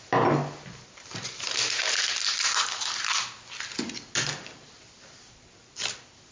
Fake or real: real